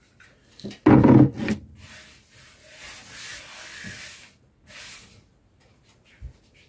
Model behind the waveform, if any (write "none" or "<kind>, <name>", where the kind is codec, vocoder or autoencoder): none